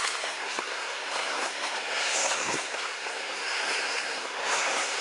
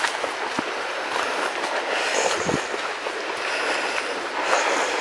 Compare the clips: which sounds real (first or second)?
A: second